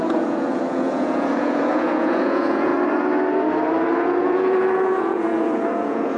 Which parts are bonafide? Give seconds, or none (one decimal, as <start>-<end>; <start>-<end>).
2.7-4.2